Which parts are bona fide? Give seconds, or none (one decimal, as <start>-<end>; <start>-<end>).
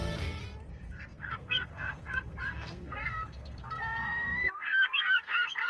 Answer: 0.0-0.7